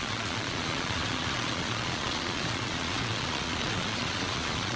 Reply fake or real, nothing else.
fake